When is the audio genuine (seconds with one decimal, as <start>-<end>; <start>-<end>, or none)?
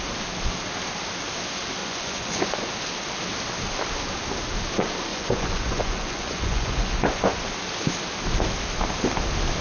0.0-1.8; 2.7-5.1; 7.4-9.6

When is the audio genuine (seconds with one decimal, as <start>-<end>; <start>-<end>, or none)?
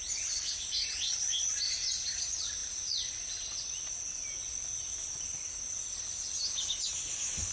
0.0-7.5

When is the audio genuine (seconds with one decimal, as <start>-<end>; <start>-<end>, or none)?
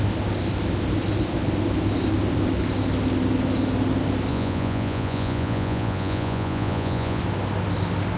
0.0-4.3; 7.2-8.2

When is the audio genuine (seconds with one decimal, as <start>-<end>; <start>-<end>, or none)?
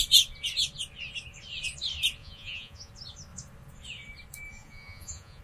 0.0-2.2; 2.9-4.5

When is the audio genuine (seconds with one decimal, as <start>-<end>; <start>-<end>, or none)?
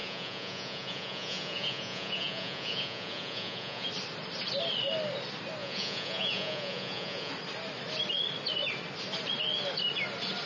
3.9-5.6; 7.3-10.5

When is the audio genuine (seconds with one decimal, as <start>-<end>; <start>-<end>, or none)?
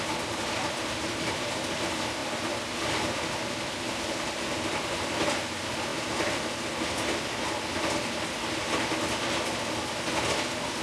0.0-10.8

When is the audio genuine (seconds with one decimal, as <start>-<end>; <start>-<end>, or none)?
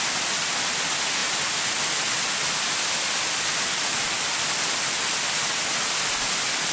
0.0-6.7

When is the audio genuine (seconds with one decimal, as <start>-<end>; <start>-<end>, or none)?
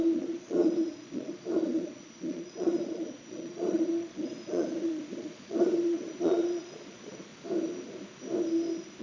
7.3-9.0